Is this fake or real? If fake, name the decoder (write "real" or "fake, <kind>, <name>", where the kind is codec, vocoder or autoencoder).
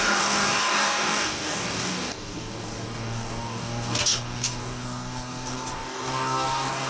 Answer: fake, codec, DAC